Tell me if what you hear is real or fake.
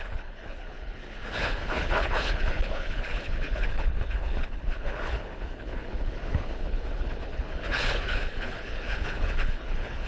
fake